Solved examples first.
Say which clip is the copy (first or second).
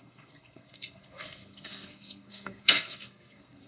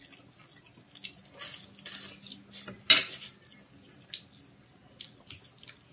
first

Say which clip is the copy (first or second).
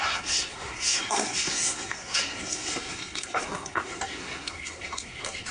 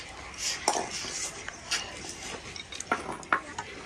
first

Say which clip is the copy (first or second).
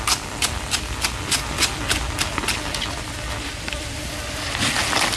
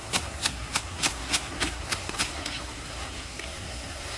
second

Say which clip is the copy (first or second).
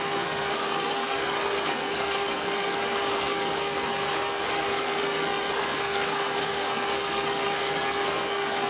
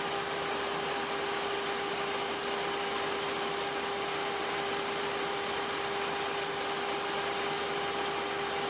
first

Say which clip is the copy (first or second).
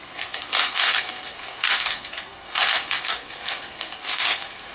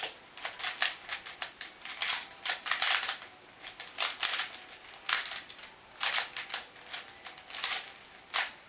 first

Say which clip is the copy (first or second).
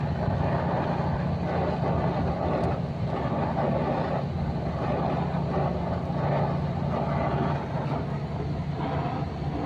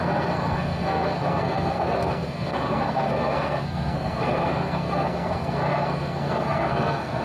second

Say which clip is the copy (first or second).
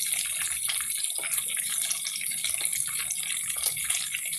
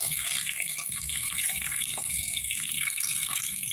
second